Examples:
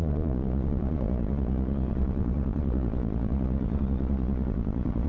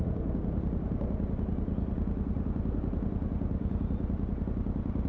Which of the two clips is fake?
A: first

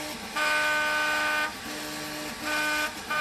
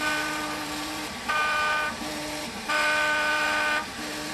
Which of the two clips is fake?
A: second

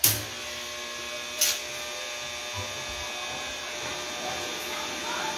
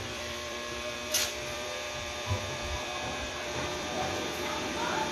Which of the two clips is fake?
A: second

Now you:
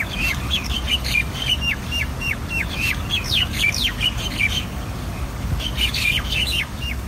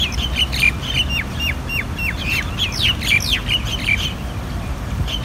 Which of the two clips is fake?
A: first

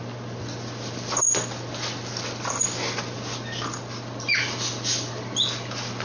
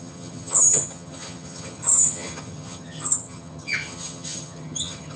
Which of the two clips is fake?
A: second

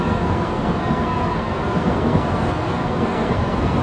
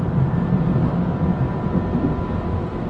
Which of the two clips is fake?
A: first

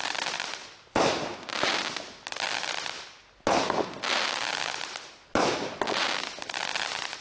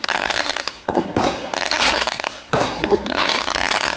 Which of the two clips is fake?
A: second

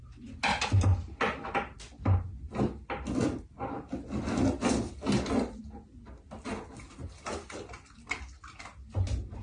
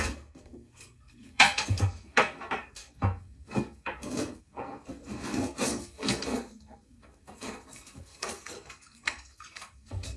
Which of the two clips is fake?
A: second